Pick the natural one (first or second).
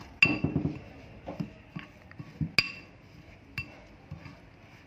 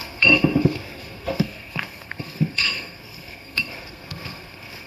first